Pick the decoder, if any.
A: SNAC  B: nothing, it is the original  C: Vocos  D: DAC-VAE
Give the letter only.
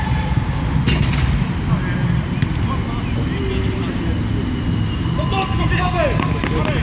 B